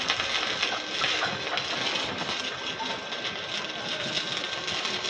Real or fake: real